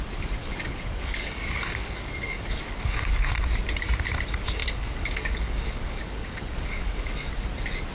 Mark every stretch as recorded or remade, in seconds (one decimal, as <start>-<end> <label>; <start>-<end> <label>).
0.0-0.4 recorded; 0.4-3.3 remade; 3.3-4.6 recorded; 4.6-7.3 remade; 7.3-7.9 recorded